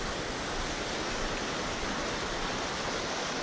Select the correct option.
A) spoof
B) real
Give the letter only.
B